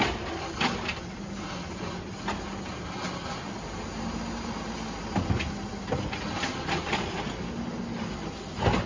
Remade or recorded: recorded